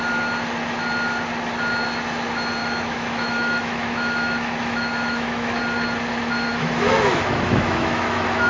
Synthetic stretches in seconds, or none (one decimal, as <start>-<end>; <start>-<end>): 2.6-5.6; 6.5-8.5